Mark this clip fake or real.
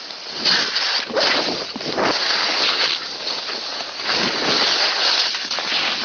real